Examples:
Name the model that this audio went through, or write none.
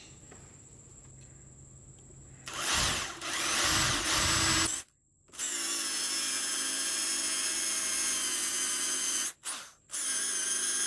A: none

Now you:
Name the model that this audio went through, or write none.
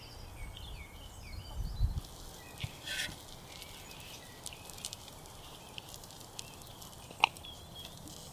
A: none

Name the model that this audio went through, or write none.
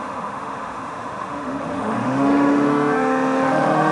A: autoencoder, DAC-VAE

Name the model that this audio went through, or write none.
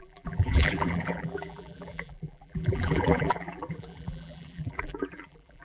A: vocoder, BigVGAN v2